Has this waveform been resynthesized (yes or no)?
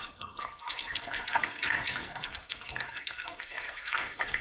yes